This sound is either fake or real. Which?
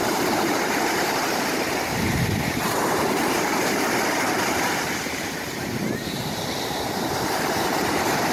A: fake